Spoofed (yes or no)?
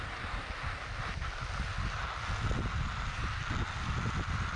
no